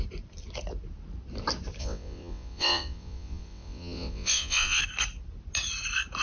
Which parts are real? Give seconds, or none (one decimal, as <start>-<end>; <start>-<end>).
0.0-1.8; 4.8-6.2